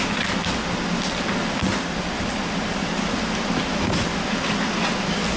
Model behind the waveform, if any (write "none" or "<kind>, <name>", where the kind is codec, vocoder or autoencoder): none